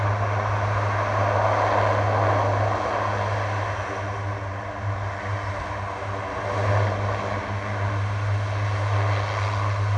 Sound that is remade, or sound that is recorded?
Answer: recorded